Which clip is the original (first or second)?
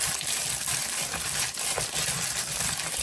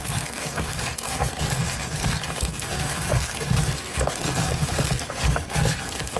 first